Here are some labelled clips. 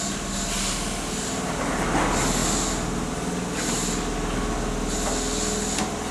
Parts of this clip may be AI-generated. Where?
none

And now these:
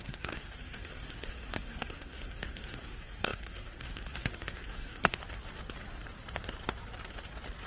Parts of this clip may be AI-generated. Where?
0.0-5.2 (codec, SNAC)